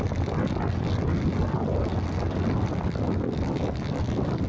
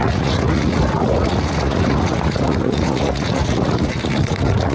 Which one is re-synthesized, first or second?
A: second